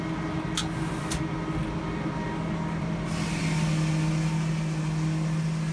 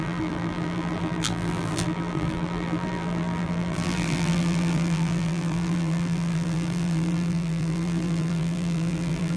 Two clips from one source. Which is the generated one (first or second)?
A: second